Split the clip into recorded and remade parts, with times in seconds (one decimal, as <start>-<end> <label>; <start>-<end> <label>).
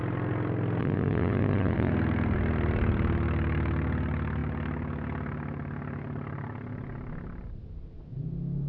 0.0-0.8 recorded; 0.8-1.9 remade; 1.9-8.7 recorded